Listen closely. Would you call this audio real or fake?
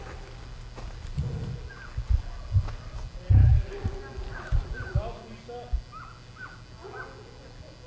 real